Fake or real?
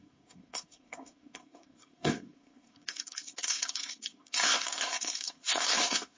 fake